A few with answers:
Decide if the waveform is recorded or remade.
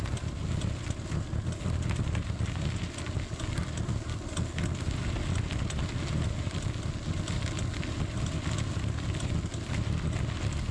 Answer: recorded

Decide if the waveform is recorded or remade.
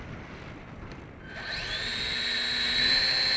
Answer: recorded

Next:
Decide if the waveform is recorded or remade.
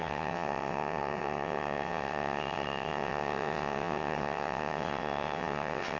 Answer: remade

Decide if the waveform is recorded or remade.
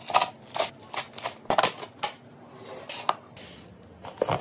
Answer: recorded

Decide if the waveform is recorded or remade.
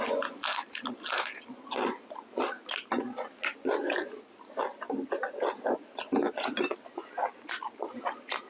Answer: recorded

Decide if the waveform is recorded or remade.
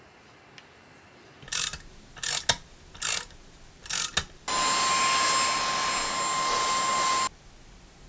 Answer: recorded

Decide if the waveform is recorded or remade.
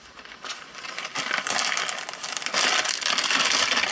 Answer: recorded